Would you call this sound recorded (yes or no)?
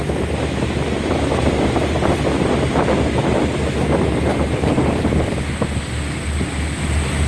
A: yes